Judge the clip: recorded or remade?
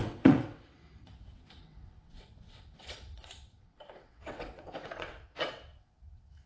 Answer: remade